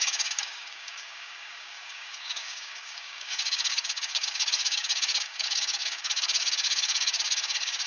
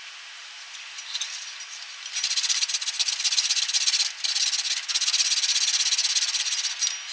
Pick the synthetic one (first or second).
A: first